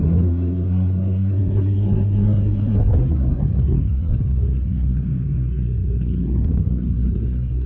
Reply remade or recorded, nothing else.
remade